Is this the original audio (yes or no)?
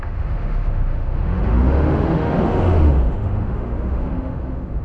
no